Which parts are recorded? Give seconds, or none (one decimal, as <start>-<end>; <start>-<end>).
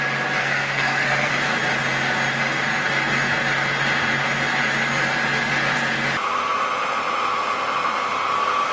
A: 0.0-0.4; 1.3-8.7